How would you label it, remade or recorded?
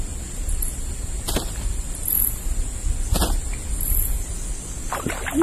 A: recorded